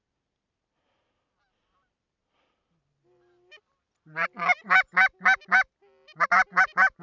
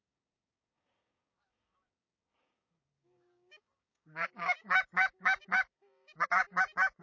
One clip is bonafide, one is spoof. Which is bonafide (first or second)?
first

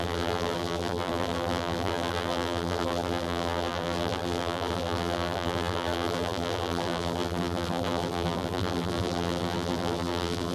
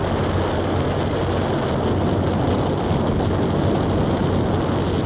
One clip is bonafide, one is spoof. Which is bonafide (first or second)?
second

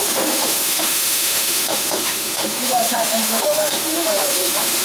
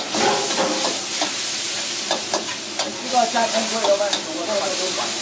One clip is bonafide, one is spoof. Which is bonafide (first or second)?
second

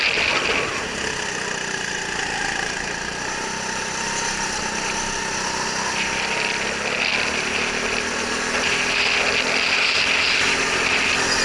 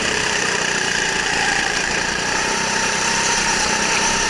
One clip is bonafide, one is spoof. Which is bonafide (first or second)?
first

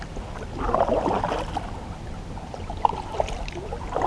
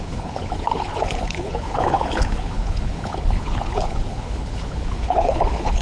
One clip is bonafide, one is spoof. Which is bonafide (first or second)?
first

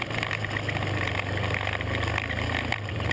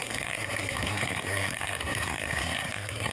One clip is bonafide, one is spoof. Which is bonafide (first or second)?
first